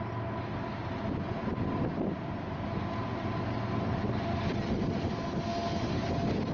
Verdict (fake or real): real